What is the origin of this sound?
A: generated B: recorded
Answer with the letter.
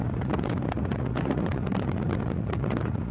A